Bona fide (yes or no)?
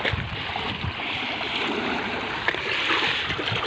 yes